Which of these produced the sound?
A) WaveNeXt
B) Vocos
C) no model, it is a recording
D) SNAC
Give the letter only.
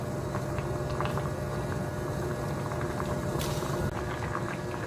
C